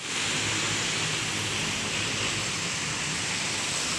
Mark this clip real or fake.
real